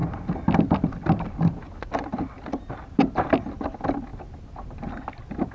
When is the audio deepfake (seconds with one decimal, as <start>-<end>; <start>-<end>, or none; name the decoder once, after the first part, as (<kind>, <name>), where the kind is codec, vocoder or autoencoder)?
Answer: none